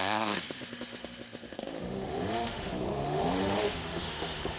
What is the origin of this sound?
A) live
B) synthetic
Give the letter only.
B